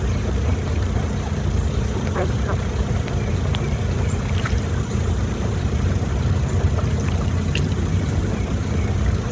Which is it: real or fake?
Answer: fake